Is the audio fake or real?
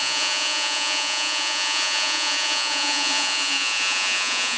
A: fake